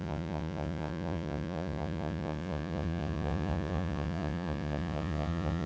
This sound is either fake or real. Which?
fake